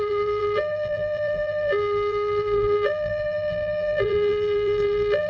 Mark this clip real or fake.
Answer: fake